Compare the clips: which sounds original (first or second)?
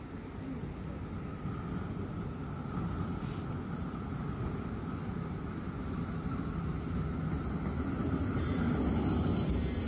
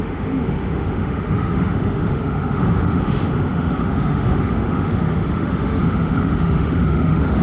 first